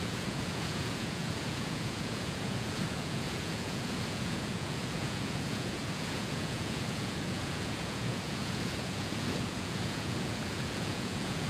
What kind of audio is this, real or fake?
fake